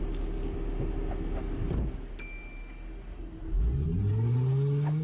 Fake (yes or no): no